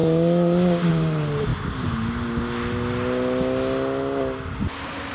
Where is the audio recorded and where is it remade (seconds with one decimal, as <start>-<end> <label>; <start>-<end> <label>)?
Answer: 0.0-0.9 recorded; 0.9-1.5 remade; 1.5-4.6 recorded; 4.6-5.1 remade